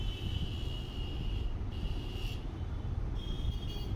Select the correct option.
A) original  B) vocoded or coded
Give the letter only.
A